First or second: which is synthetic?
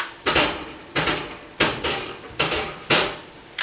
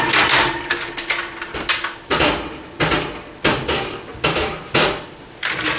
first